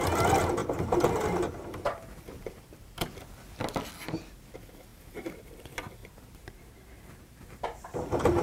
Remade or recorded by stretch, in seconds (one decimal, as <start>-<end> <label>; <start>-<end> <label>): 0.0-0.6 recorded; 0.6-3.1 remade; 3.1-4.9 recorded; 4.9-5.6 remade; 5.6-6.0 recorded; 6.0-7.8 remade; 7.8-8.4 recorded